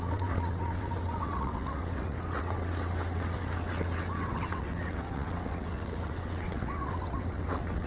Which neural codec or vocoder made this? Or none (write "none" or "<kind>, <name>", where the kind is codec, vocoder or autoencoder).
vocoder, WaveNeXt